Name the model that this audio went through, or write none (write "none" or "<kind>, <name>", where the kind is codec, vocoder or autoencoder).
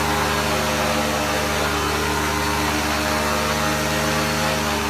none